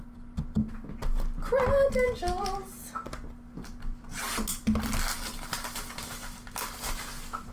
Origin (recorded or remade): recorded